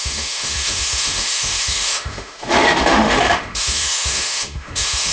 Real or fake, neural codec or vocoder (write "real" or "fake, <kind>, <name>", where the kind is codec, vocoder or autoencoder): fake, autoencoder, DAC-VAE